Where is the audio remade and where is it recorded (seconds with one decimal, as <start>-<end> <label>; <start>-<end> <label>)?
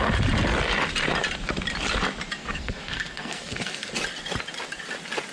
0.0-2.4 recorded; 2.4-3.9 remade; 3.9-5.3 recorded